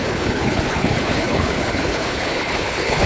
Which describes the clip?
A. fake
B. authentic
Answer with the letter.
A